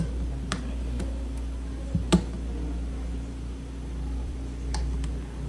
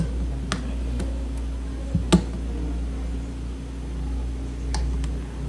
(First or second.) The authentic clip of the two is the second